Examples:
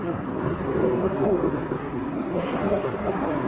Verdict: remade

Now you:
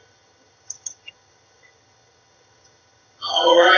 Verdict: remade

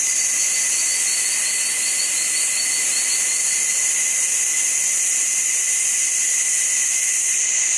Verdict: recorded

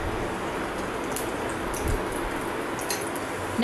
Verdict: recorded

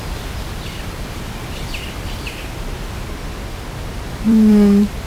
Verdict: remade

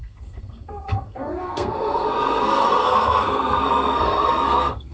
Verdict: remade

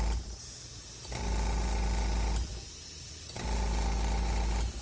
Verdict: recorded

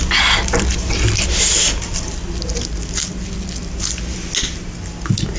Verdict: recorded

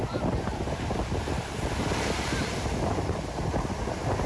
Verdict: recorded